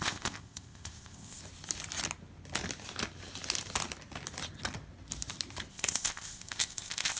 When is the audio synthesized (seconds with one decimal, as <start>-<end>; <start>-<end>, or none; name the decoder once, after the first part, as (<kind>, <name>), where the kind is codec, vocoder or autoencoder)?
0.0-1.4 (codec, ZipCodec); 5.7-7.2